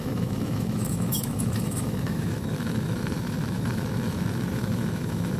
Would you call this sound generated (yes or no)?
yes